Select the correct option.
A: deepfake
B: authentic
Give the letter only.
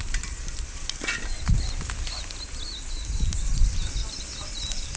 B